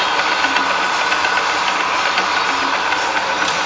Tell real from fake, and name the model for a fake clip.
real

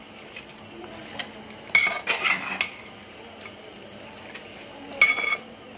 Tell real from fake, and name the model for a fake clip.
real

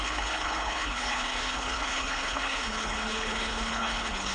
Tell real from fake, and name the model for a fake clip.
fake, codec, HILCodec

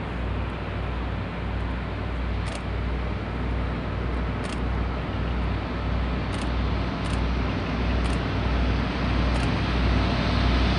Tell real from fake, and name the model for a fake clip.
real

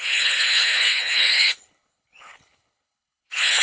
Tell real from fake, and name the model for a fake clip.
fake, codec, HILCodec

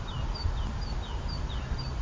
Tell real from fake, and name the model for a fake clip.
real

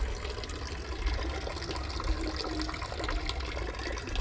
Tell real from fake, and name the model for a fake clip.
real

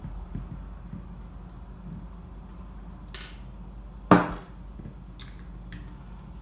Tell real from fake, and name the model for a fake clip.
real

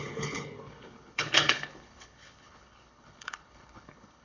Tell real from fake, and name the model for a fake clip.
fake, codec, HILCodec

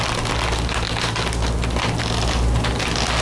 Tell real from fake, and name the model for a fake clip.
real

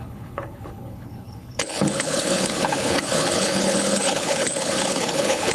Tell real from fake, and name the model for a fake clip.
fake, codec, HILCodec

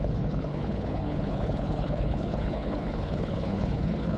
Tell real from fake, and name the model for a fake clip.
fake, codec, HILCodec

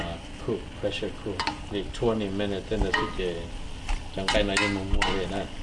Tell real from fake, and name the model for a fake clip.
real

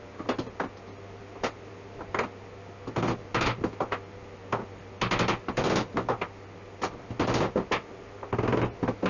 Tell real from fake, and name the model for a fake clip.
real